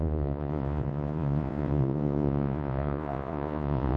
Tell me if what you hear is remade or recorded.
remade